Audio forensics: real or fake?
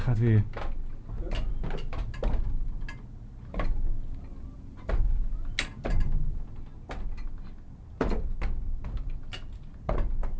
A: real